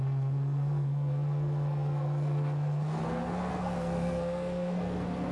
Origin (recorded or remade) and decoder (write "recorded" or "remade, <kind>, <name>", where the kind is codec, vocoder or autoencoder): remade, codec, SNAC